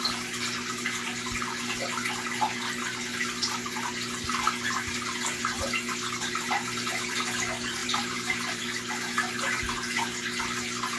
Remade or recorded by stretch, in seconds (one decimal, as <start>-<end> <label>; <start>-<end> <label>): 0.0-7.8 recorded; 7.8-8.6 remade; 8.6-11.0 recorded